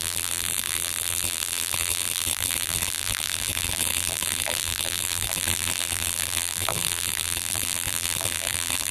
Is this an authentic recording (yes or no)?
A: no